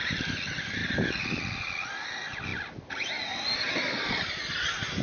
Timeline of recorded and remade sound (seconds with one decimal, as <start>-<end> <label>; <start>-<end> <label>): 0.0-5.0 recorded